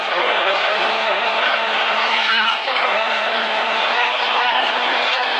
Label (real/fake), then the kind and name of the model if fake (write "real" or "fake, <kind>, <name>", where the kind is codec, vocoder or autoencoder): fake, codec, SNAC